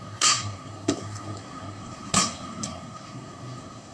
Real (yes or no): no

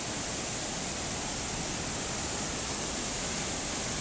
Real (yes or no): yes